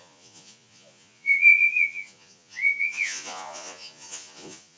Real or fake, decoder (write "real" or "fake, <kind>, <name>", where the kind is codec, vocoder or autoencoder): fake, vocoder, Vocos